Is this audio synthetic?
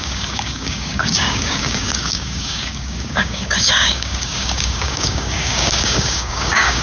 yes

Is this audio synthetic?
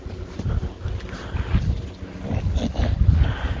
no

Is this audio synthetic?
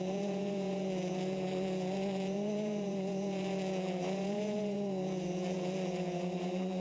yes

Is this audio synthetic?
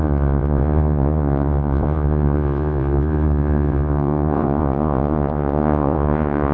yes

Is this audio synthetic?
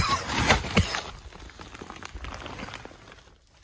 no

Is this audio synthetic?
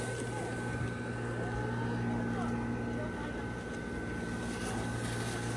no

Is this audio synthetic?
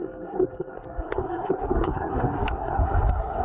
yes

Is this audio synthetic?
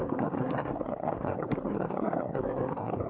yes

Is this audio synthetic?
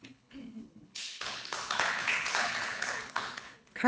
yes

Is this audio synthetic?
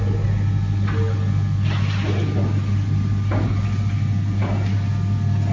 no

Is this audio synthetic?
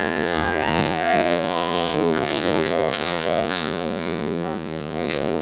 yes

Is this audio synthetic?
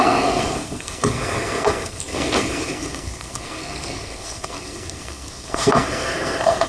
yes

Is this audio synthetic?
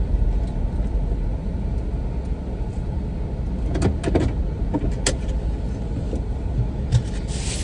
no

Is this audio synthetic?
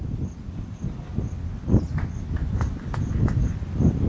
no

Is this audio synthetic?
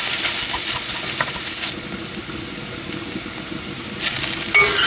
no